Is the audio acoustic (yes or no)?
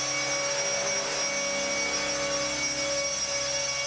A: yes